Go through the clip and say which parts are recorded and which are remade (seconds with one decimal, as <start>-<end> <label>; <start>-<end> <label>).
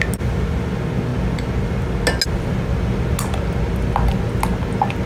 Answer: 0.0-5.1 recorded